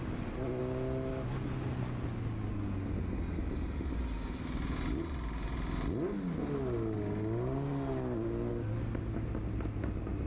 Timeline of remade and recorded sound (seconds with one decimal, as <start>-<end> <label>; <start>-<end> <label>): 0.0-10.3 recorded